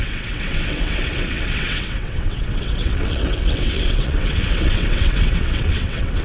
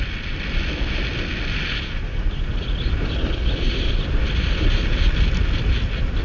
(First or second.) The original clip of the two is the second